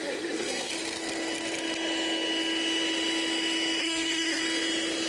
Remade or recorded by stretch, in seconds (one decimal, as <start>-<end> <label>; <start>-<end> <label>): 0.0-0.7 remade; 0.7-3.8 recorded; 3.8-4.4 remade; 4.4-5.1 recorded